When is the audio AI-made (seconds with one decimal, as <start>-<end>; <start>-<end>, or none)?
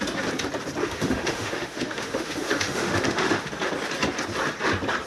0.8-3.5